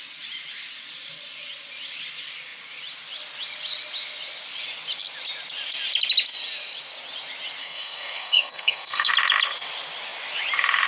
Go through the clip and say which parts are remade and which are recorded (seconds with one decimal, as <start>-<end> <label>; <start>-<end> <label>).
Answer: 0.0-7.6 recorded; 7.6-9.1 remade; 9.1-10.9 recorded